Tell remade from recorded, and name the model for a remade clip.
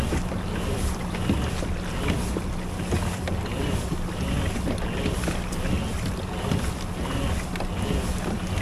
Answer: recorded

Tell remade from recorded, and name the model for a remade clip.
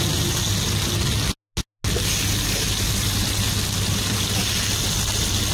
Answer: recorded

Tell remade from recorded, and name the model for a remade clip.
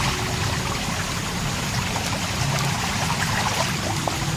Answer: recorded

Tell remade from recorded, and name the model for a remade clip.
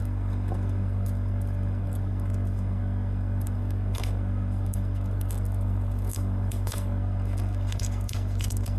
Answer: remade, codec, SNAC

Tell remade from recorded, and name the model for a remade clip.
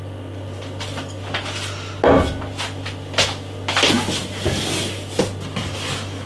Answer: recorded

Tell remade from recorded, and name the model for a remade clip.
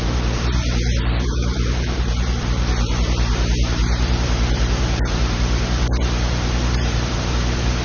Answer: remade, vocoder, BigVGAN v2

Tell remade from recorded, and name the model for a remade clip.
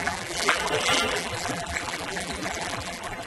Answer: remade, vocoder, BigVGAN v2